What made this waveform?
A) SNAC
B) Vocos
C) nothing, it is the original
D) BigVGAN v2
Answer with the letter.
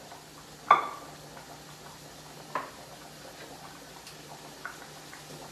C